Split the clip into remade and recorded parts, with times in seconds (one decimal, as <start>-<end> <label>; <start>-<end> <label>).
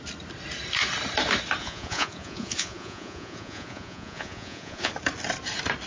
0.0-1.6 recorded; 1.6-4.9 remade; 4.9-5.9 recorded